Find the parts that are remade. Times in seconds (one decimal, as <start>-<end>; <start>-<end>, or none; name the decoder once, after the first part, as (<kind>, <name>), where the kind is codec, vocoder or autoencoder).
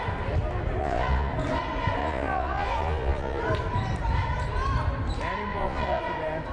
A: 0.8-1.3 (vocoder, Vocos); 2.0-3.4; 5.5-6.0